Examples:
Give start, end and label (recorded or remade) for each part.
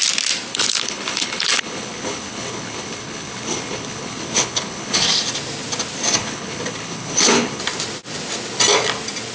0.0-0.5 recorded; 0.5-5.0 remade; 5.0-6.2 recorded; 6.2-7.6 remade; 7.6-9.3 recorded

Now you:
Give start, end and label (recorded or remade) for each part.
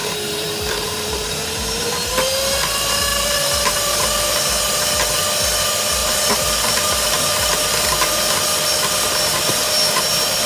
0.0-2.1 remade; 2.1-3.1 recorded; 3.1-4.5 remade; 4.5-6.0 recorded; 6.0-7.6 remade; 7.6-10.5 recorded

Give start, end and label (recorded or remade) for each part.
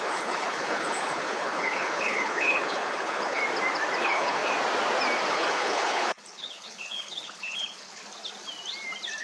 0.0-3.4 remade; 3.4-4.0 recorded; 4.0-4.4 remade; 4.4-5.3 recorded; 5.3-8.0 remade; 8.0-9.2 recorded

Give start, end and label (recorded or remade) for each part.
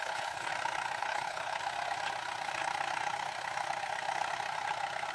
0.0-0.5 remade; 0.5-1.0 recorded; 1.0-1.6 remade; 1.6-5.1 recorded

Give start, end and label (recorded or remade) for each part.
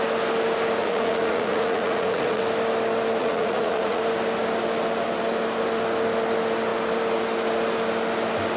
0.0-0.8 recorded; 0.8-2.4 remade; 2.4-3.2 recorded; 3.2-4.0 remade; 4.0-8.6 recorded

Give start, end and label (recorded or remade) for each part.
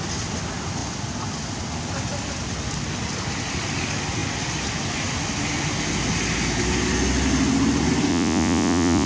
0.0-8.1 recorded; 8.1-9.1 remade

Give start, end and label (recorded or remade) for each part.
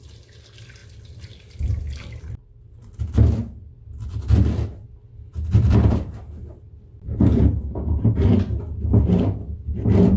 0.0-5.3 recorded; 5.3-9.1 remade; 9.1-10.2 recorded